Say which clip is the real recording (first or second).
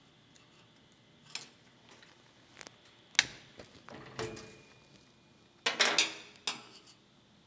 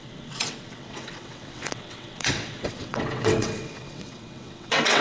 first